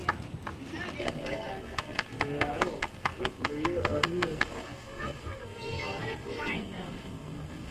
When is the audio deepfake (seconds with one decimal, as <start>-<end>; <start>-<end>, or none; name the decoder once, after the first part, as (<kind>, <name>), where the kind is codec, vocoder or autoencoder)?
1.0-7.7 (codec, SNAC)

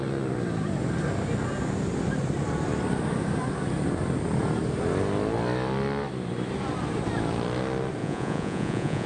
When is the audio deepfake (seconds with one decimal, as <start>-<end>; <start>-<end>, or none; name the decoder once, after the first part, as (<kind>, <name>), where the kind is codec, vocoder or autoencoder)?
8.0-9.1 (vocoder, Vocos)

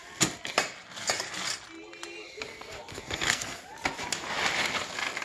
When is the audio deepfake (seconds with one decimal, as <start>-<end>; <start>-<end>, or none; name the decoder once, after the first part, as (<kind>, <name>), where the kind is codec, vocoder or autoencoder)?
2.5-3.6 (codec, SNAC)

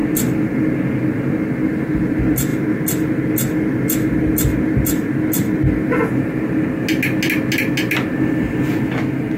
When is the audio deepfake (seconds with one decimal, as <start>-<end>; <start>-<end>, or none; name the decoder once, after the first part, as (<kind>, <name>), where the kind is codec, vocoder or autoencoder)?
none

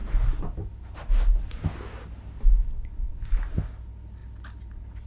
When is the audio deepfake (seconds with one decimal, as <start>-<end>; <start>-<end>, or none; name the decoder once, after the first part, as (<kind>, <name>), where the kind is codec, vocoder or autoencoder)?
none

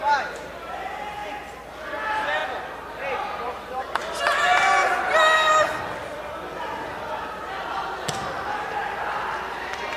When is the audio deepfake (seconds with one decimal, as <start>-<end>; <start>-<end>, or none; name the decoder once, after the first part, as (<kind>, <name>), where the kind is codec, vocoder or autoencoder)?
0.0-1.2 (vocoder, BigVGAN v2); 1.9-2.4; 2.9-4.0; 7.1-8.8; 9.6-10.0

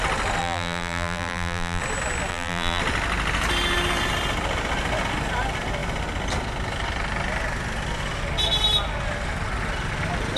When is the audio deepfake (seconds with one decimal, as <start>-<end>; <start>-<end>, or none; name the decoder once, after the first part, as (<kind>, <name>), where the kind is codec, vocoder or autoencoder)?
0.4-1.8 (vocoder, BigVGAN v2); 2.3-2.8

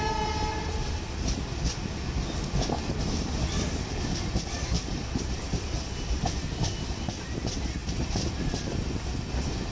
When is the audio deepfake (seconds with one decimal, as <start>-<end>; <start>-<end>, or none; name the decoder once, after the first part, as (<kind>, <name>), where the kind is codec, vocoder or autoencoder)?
none